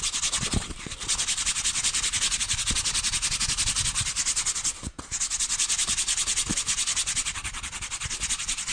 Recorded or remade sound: recorded